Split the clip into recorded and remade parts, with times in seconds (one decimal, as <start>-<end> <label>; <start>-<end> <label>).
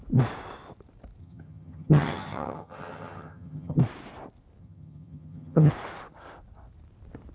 0.0-1.2 recorded; 1.2-3.8 remade; 3.8-4.6 recorded; 4.6-5.7 remade; 5.7-7.3 recorded